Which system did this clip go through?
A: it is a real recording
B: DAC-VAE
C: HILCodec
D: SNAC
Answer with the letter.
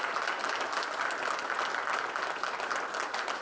A